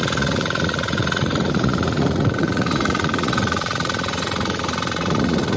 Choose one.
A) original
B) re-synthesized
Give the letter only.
B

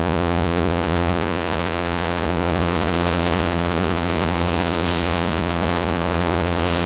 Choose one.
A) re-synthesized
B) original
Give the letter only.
A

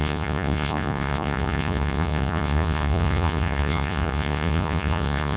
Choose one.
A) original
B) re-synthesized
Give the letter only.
B